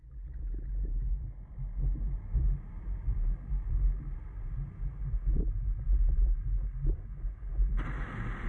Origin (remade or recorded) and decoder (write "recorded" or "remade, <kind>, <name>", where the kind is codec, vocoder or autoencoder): recorded